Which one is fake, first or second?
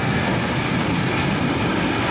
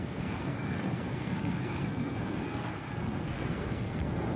second